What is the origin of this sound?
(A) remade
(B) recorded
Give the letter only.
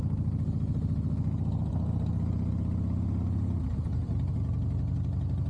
B